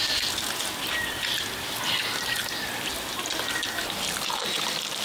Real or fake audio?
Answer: real